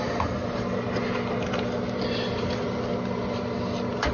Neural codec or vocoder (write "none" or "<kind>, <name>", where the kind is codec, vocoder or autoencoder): none